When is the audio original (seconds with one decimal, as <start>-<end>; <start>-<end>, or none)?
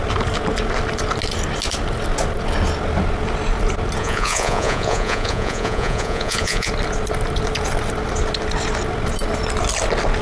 0.0-4.0; 6.7-10.2